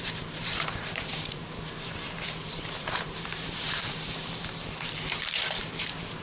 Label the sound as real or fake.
fake